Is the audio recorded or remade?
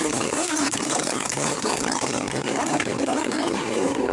remade